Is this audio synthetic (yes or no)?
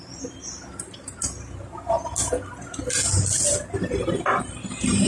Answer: no